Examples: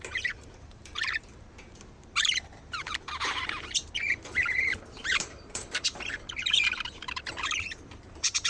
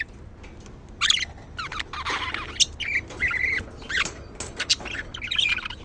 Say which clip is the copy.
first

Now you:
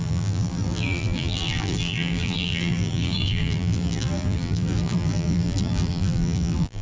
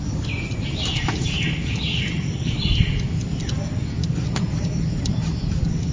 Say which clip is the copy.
first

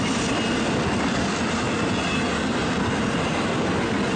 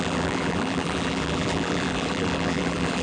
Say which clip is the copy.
second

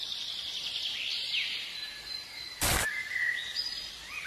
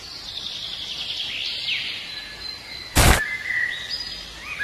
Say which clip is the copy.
first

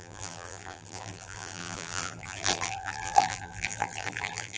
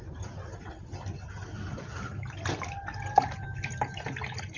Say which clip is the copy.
first